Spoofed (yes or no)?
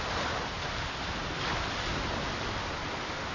no